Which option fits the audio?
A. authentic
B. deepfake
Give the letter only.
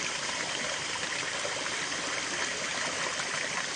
A